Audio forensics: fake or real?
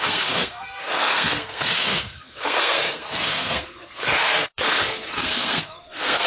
fake